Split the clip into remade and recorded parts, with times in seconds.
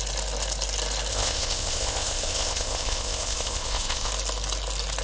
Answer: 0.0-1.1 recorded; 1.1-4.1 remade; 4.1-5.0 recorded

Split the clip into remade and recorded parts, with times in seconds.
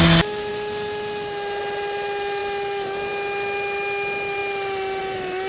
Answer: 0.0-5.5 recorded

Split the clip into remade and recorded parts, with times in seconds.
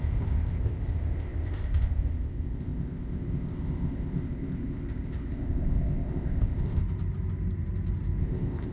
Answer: 0.0-6.8 remade; 6.8-8.2 recorded; 8.2-8.7 remade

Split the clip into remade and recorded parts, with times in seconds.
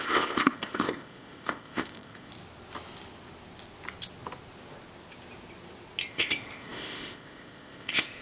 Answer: 0.0-2.3 remade; 2.3-6.1 recorded; 6.1-8.2 remade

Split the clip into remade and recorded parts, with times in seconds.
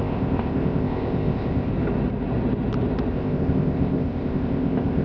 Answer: 0.0-1.7 remade; 1.7-3.1 recorded; 3.1-5.0 remade